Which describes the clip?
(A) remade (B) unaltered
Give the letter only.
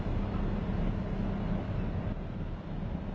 B